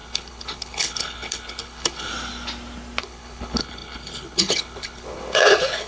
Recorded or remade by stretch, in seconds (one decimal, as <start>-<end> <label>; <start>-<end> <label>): 0.0-2.1 remade; 2.1-3.0 recorded; 3.0-5.9 remade